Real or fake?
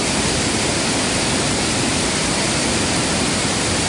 real